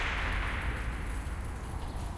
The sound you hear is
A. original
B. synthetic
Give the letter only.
B